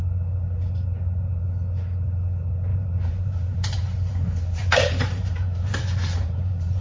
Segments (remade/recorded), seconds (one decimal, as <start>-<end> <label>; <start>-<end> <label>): 0.0-2.7 recorded; 2.7-6.8 remade